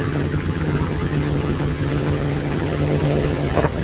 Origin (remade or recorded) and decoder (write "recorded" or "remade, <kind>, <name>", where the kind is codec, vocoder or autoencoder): remade, vocoder, HiFi-GAN